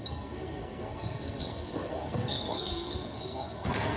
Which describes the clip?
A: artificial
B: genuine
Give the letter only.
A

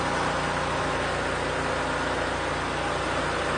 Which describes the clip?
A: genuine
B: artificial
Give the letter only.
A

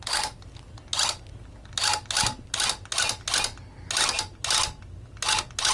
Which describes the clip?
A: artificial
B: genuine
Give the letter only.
B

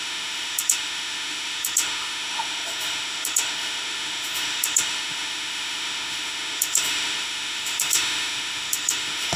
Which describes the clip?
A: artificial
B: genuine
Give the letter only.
A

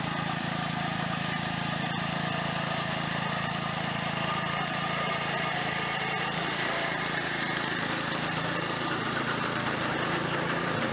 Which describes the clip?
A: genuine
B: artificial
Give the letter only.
B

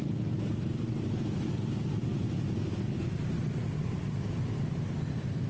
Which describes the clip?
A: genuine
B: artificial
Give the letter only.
A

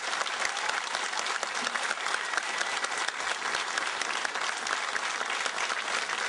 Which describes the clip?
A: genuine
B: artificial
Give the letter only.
A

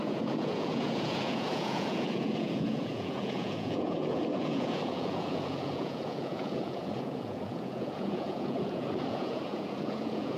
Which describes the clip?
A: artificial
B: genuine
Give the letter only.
A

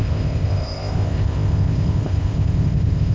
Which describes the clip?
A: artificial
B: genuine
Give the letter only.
A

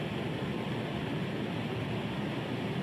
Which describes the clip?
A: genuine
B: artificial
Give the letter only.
A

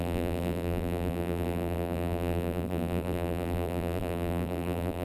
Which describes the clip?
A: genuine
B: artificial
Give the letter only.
B